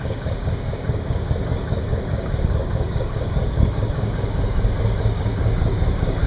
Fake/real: fake